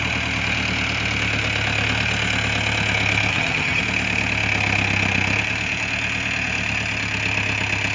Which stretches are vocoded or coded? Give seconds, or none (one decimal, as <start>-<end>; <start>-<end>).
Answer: 3.3-3.8